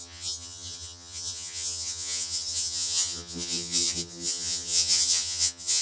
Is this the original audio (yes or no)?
no